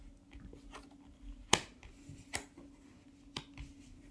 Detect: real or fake real